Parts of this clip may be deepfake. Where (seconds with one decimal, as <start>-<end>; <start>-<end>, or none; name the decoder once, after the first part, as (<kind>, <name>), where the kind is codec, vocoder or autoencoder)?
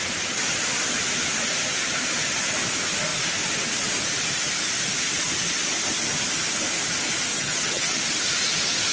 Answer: 7.3-8.0 (vocoder, HiFi-GAN)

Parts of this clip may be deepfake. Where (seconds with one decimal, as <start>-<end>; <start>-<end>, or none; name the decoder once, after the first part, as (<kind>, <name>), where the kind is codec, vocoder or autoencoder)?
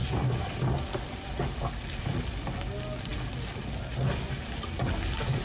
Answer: none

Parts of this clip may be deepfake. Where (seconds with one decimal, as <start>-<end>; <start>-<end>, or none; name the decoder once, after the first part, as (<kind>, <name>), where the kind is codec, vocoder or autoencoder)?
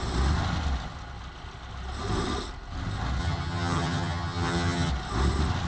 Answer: 3.2-4.9 (vocoder, HiFi-GAN)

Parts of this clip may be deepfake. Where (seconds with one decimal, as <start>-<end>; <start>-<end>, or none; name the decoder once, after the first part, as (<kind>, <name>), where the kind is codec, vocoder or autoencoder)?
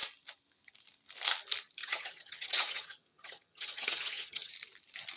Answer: 1.8-4.5 (vocoder, HiFi-GAN)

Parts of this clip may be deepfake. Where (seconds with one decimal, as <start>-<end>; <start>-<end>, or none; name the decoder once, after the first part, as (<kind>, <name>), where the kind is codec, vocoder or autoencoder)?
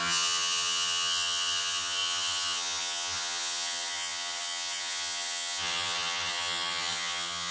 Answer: 0.0-7.5 (vocoder, HiFi-GAN)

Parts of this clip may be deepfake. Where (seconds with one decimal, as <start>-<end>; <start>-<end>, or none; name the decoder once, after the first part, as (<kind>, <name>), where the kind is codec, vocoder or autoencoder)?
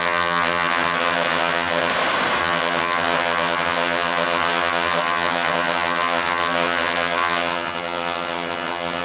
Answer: 0.0-1.9 (vocoder, HiFi-GAN); 2.4-9.0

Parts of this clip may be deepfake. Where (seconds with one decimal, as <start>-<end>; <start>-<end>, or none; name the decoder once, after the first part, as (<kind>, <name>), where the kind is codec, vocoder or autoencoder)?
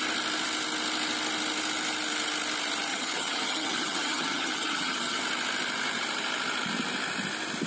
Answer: 2.9-5.2 (vocoder, HiFi-GAN)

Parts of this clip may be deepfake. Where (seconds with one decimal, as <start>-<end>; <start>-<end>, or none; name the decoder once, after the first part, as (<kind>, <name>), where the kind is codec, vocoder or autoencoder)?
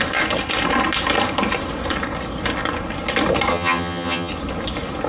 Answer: 3.5-4.3 (vocoder, HiFi-GAN)